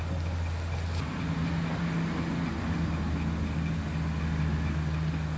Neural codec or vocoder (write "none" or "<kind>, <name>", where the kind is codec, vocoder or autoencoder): none